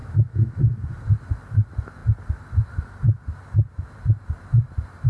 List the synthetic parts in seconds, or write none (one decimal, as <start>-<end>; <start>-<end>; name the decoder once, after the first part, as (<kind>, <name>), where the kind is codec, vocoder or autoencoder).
0.0-0.6 (autoencoder, DAC-VAE)